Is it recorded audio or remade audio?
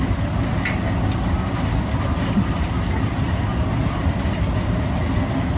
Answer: recorded